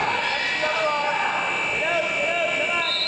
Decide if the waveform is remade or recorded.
recorded